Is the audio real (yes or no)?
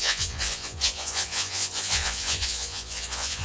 no